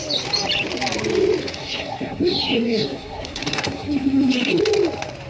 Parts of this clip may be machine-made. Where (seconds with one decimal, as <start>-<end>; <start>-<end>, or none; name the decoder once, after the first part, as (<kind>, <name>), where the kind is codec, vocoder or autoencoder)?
1.4-4.6 (codec, SNAC)